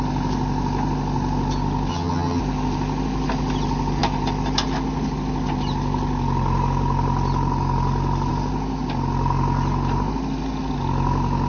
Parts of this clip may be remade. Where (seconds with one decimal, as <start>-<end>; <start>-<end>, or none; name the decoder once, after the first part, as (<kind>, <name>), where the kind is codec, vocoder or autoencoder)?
1.9-2.4 (vocoder, HiFi-GAN)